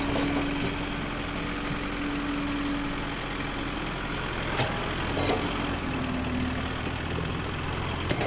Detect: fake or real real